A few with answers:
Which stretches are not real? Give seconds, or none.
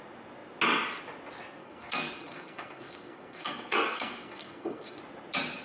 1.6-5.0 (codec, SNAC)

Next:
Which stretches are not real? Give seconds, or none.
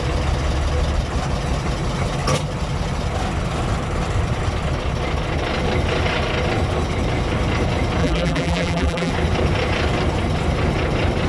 8.0-9.1 (vocoder, BigVGAN v2)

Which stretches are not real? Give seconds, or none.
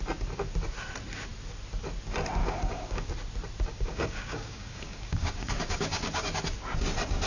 2.4-3.1 (codec, DAC); 3.7-6.3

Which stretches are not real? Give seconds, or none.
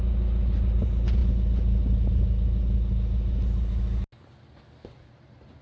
none